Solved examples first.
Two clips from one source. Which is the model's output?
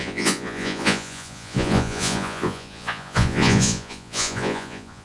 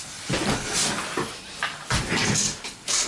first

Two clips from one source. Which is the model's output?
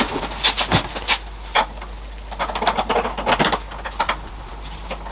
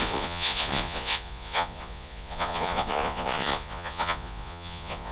second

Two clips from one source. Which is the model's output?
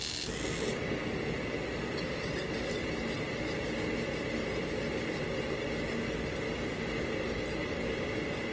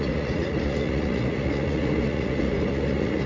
second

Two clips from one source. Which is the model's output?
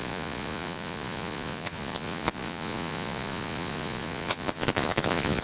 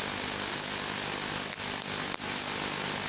first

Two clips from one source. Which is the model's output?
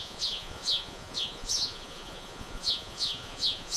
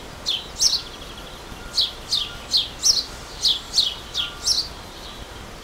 first